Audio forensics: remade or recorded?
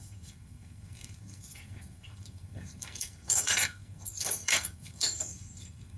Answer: remade